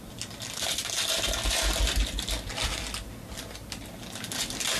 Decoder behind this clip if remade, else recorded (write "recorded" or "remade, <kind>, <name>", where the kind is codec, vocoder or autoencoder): recorded